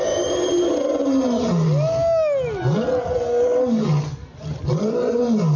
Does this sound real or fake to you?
real